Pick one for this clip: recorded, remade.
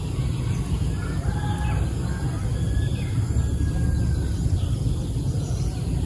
recorded